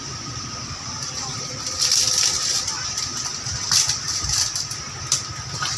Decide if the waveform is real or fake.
real